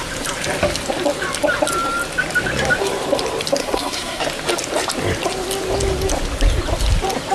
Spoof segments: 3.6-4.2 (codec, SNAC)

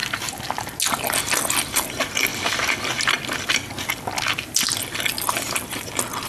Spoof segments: 1.9-2.3 (vocoder, BigVGAN v2)

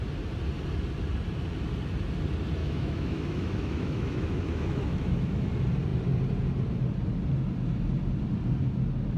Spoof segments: 2.6-5.5 (autoencoder, DAC-VAE)